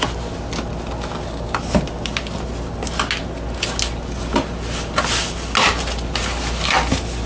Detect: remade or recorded recorded